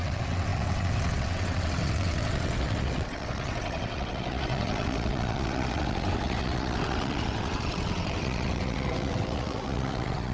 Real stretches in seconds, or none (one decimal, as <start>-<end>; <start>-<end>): none